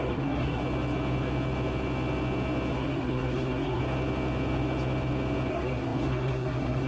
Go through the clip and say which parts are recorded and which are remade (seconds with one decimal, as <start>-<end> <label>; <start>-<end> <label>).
0.0-0.6 remade; 0.6-2.7 recorded; 2.7-3.8 remade; 3.8-5.5 recorded; 5.5-6.9 remade

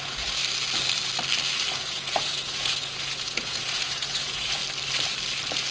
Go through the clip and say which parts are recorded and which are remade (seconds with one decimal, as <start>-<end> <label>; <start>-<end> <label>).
0.0-0.4 remade; 0.4-1.7 recorded; 1.7-4.6 remade; 4.6-5.7 recorded

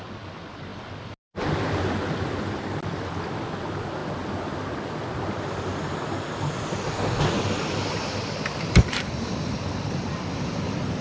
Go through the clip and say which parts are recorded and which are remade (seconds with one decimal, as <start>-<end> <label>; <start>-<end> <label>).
0.0-11.0 recorded

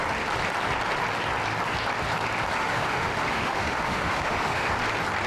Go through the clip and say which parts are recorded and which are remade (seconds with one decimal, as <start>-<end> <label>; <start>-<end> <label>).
0.0-2.6 recorded; 2.6-4.7 remade; 4.7-5.3 recorded

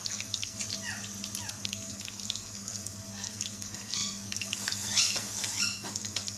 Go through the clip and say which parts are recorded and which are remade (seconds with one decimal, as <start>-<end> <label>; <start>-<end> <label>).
0.0-0.6 remade; 0.6-1.5 recorded; 1.5-6.4 remade

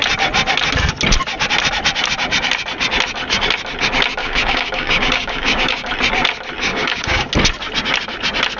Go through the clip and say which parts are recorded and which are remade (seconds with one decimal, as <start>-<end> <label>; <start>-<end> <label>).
0.0-4.2 recorded; 4.2-5.9 remade; 5.9-6.7 recorded; 6.7-7.3 remade; 7.3-8.6 recorded